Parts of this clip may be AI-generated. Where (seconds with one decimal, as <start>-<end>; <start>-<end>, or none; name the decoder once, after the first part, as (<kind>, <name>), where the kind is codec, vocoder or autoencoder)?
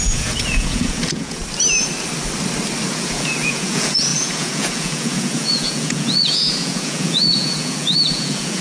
0.0-1.4 (vocoder, Vocos); 2.9-8.6